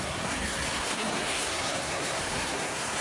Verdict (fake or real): fake